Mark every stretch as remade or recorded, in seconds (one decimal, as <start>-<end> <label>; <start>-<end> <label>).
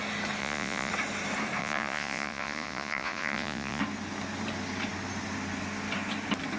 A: 0.0-0.4 recorded; 0.4-0.9 remade; 0.9-1.6 recorded; 1.6-3.8 remade; 3.8-6.6 recorded